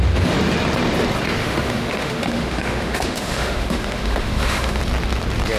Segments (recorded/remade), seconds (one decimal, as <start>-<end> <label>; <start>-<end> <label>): 0.0-1.4 recorded; 1.4-4.8 remade; 4.8-5.6 recorded